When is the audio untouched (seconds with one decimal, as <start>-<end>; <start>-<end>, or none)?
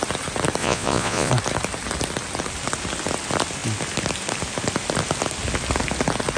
0.0-0.6; 1.3-6.4